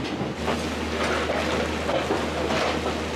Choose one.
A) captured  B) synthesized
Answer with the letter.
A